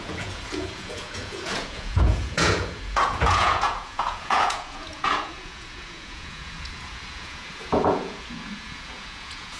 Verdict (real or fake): fake